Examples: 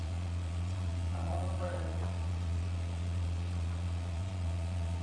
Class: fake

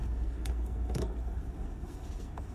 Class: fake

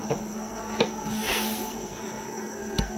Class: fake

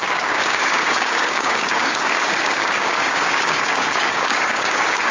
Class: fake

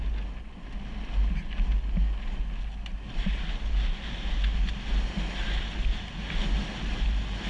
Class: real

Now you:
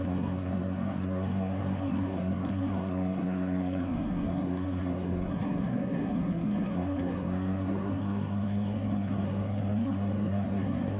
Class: fake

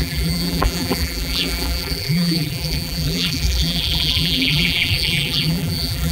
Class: fake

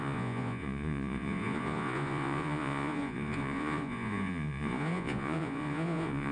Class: fake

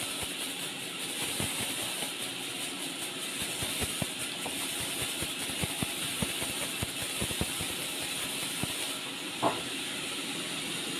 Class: fake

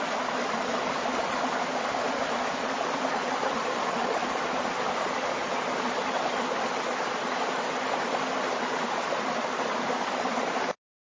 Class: fake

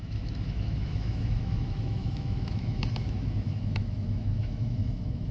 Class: fake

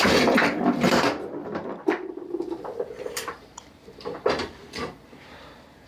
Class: fake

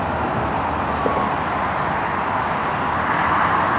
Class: real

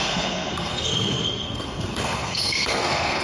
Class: fake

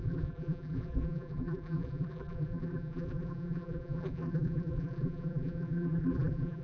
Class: fake